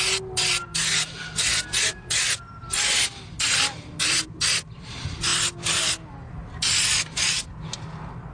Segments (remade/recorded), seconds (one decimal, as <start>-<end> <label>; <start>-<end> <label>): 0.0-0.7 recorded; 0.7-4.0 remade; 4.0-5.3 recorded; 5.3-5.9 remade; 5.9-8.3 recorded